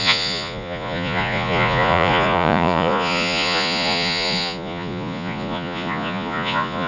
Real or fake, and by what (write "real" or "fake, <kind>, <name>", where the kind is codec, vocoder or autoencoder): fake, vocoder, Vocos